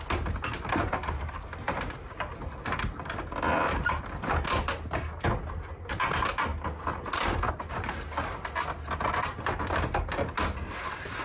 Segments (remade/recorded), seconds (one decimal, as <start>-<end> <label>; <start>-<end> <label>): 0.0-11.2 recorded

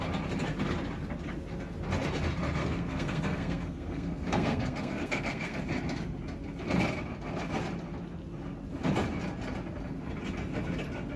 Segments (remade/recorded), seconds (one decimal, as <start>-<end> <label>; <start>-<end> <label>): 0.0-2.6 recorded; 2.6-5.6 remade; 5.6-11.2 recorded